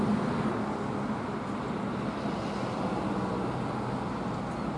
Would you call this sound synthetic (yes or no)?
no